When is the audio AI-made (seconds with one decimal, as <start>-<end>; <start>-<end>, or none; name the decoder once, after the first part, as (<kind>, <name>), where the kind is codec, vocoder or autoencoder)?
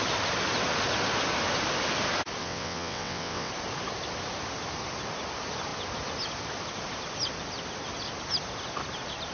2.4-3.5 (vocoder, WaveNeXt)